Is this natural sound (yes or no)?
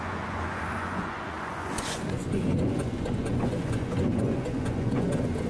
no